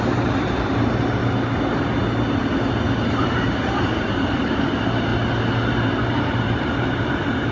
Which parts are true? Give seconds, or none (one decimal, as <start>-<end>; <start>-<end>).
1.2-3.1; 5.1-5.7